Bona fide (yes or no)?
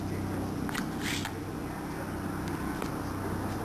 yes